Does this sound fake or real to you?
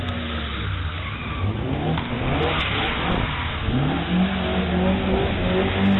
real